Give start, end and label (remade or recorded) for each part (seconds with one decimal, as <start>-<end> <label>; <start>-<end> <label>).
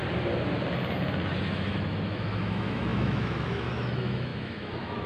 0.0-1.5 recorded; 1.5-5.1 remade